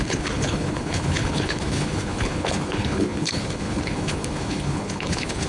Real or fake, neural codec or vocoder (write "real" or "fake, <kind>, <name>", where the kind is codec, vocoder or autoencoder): fake, codec, HILCodec